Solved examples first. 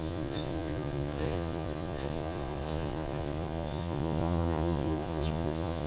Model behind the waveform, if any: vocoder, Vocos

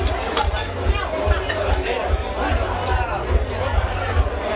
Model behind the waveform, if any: none